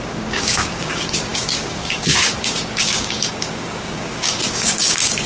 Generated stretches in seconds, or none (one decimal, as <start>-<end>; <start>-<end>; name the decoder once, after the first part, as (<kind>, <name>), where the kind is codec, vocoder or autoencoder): 0.0-5.3 (codec, DAC)